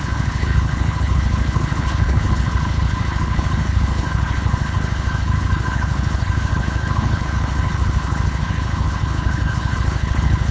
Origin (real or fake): fake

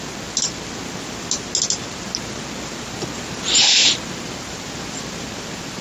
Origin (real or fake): real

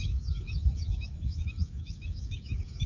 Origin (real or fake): fake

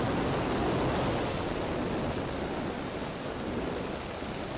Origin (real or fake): real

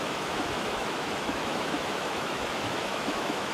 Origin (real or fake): fake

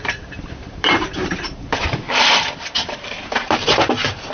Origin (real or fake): fake